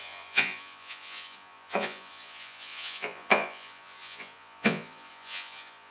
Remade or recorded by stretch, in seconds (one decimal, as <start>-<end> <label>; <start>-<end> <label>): 0.0-5.9 remade